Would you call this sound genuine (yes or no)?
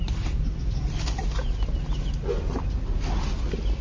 yes